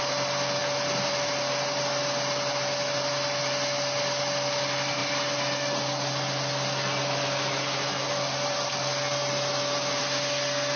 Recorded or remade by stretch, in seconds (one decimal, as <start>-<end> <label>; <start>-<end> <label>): 0.0-10.8 recorded